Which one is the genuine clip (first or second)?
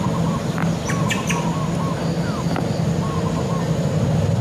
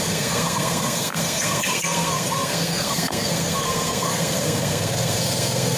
first